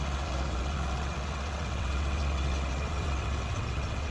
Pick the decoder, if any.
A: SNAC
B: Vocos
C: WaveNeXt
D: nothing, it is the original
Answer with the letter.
C